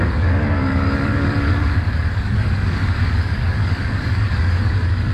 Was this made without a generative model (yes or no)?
no